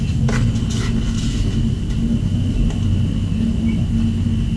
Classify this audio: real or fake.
real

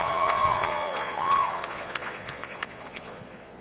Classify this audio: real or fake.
fake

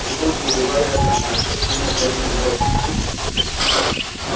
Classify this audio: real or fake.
real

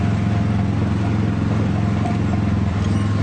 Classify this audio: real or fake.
real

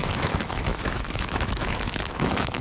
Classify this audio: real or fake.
fake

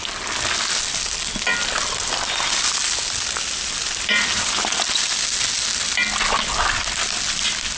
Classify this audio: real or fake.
real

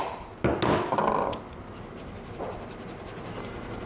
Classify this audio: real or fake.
real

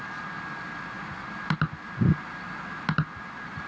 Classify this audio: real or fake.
real